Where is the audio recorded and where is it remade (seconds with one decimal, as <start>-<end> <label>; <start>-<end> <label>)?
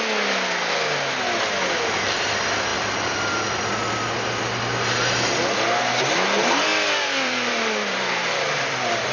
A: 0.0-2.7 recorded; 2.7-3.6 remade; 3.6-6.7 recorded; 6.7-9.1 remade